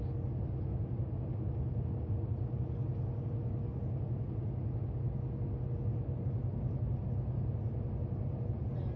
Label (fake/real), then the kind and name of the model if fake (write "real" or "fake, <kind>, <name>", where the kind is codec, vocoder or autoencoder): real